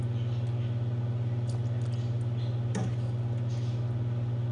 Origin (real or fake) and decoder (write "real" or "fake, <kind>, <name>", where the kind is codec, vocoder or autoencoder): real